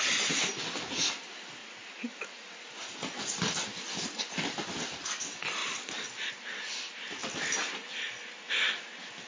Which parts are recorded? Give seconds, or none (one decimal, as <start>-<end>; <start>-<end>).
0.0-1.6; 3.4-9.3